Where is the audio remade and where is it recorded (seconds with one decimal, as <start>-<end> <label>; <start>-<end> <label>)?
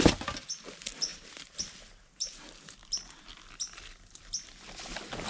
0.0-5.3 recorded